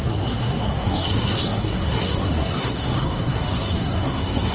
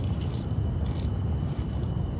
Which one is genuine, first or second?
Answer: second